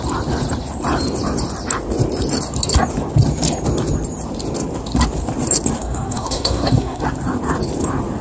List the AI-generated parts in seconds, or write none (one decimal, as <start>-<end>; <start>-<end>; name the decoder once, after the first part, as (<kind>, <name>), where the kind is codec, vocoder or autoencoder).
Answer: 5.8-7.0 (codec, SNAC)

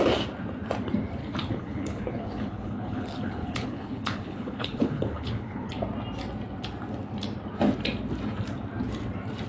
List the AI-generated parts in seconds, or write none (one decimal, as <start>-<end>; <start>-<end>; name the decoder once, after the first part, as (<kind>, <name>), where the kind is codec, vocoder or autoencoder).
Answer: 1.2-5.7 (codec, HILCodec)

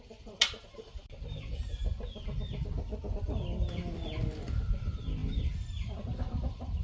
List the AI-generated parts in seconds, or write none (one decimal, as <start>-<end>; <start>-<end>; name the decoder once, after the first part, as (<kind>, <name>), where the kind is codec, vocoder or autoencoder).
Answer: none

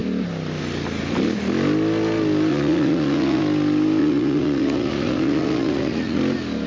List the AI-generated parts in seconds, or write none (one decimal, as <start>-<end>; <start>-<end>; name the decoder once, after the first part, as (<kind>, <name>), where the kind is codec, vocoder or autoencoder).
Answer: 2.5-3.4 (vocoder, Vocos); 4.0-6.2

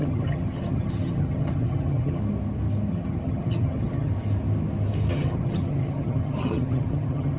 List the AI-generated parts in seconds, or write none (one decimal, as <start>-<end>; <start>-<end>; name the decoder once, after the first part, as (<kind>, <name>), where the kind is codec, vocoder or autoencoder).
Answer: 0.0-2.2 (vocoder, HiFi-GAN); 2.9-4.1; 5.1-7.4

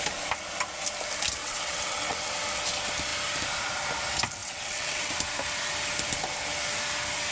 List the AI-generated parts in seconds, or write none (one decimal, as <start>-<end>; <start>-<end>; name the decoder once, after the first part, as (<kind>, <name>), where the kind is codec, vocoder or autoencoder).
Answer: 1.4-2.3 (vocoder, WaveNeXt); 4.4-5.1